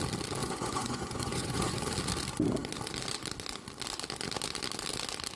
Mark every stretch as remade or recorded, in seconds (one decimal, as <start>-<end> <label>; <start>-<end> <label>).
0.0-0.4 recorded; 0.4-1.8 remade; 1.8-5.4 recorded